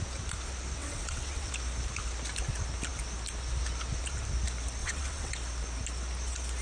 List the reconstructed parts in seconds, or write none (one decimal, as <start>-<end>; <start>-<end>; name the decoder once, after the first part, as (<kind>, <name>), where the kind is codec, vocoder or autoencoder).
0.8-1.5 (vocoder, WaveNeXt); 4.8-5.3

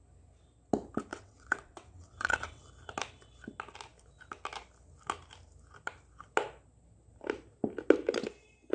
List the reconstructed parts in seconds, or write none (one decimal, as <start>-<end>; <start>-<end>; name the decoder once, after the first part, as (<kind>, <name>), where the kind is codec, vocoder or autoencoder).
1.1-2.6 (vocoder, WaveNeXt)